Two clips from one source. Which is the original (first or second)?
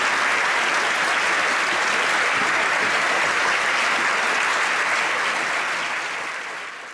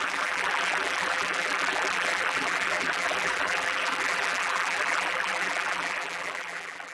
first